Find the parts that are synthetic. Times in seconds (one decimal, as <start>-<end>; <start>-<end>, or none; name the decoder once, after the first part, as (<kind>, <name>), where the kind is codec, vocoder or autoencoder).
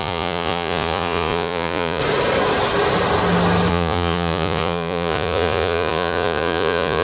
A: 0.0-2.0 (vocoder, Vocos); 3.7-7.0